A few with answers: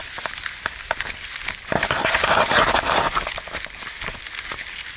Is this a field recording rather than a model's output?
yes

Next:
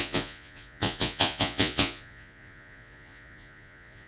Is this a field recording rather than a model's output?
no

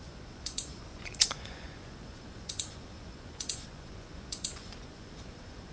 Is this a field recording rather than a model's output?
no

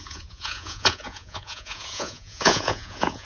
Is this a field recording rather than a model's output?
no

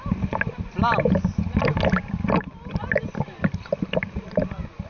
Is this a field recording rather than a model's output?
yes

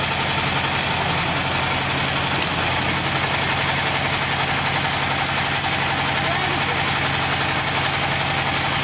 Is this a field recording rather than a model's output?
yes